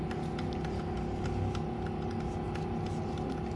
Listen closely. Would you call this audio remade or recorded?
recorded